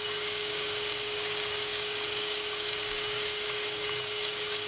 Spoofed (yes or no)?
yes